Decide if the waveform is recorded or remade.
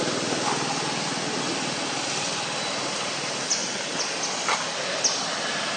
recorded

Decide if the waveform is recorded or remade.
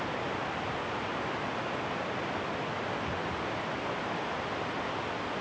recorded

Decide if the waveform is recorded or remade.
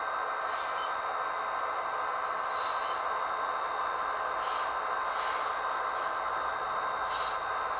recorded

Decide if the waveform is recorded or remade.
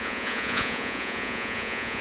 remade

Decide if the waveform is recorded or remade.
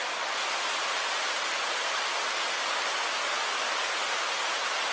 recorded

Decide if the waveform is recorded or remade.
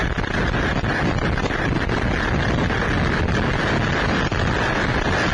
recorded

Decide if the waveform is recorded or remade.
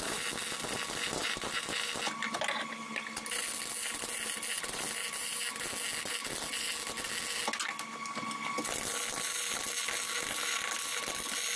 recorded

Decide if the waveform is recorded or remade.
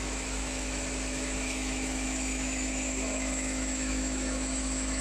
remade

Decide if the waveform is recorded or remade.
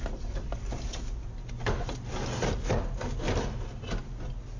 recorded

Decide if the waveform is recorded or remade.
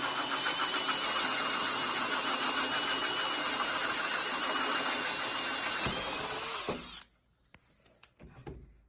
recorded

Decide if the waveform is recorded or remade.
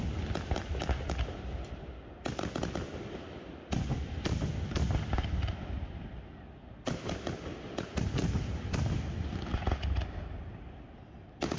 recorded